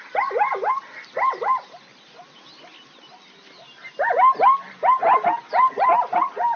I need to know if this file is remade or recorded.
recorded